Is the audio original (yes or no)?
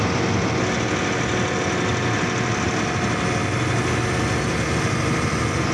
yes